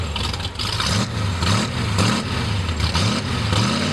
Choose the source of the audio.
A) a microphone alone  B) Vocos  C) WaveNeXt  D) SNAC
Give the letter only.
A